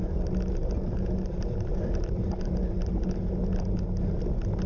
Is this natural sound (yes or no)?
yes